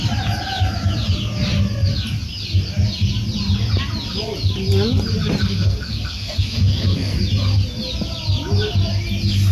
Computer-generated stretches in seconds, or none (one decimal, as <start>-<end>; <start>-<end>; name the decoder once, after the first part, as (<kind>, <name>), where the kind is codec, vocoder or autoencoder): 5.4-7.2 (codec, SNAC)